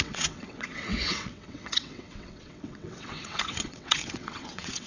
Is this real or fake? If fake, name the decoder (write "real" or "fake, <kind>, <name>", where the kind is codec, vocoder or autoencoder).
fake, vocoder, WaveNeXt